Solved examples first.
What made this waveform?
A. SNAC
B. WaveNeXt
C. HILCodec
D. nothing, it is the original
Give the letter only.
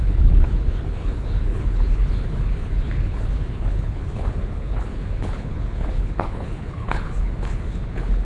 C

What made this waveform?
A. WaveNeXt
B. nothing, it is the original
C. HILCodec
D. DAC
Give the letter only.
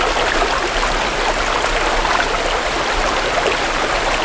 B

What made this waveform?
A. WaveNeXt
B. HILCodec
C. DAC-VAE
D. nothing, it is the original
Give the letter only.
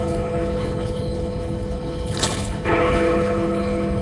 B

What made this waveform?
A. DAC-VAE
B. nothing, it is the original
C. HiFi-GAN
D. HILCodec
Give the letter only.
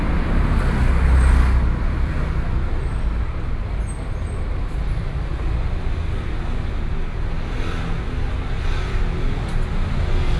B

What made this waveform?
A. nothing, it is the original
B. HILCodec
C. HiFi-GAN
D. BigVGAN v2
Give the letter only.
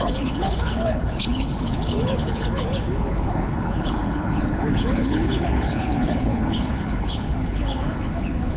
B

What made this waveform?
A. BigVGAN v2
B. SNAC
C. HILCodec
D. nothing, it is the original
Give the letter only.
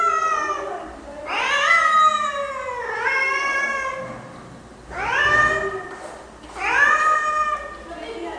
D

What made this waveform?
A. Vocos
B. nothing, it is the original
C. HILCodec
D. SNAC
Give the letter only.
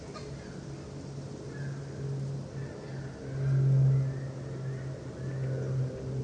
B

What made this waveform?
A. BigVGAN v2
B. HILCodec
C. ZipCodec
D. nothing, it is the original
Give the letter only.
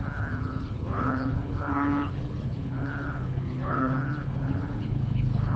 B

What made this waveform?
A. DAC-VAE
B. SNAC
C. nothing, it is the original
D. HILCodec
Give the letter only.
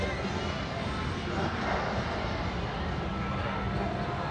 C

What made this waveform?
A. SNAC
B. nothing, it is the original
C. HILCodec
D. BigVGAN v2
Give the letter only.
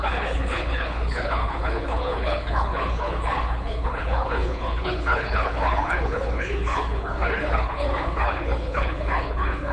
C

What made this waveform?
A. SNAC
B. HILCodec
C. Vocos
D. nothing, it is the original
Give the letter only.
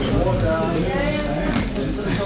D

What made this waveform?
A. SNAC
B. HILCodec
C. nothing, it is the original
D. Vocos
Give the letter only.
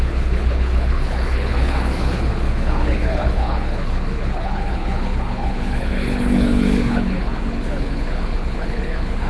B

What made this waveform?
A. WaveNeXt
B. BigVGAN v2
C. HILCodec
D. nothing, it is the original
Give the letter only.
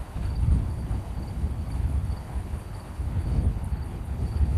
C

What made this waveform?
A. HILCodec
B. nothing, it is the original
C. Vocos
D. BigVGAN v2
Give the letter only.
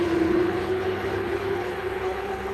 A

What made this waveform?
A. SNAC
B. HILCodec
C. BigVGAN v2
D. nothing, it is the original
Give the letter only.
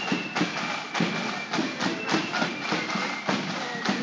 D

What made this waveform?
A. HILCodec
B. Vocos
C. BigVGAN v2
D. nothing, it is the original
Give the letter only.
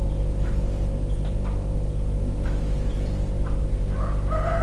D